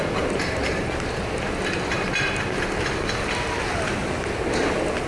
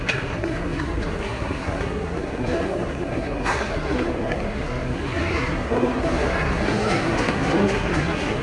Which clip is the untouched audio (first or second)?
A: first